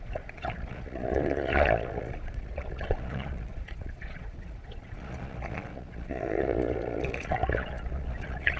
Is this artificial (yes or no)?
yes